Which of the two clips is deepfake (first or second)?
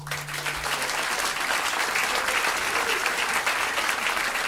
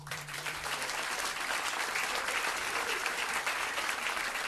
second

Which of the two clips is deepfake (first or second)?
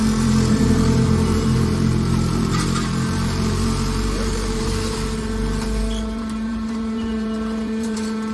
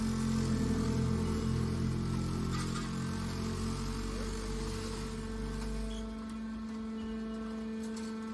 first